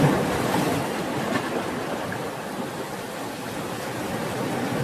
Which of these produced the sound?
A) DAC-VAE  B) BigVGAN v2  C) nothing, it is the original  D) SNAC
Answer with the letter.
C